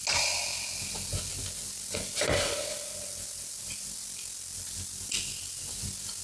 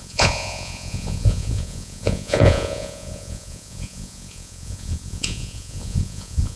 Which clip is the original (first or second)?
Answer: first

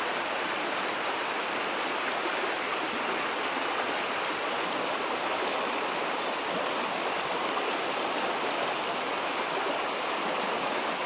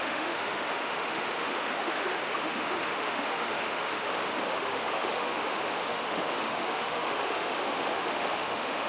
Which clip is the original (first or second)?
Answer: first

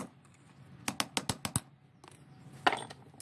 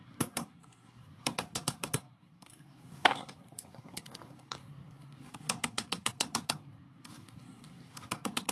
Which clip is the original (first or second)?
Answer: first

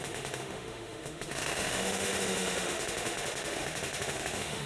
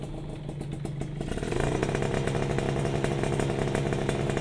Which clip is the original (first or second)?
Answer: second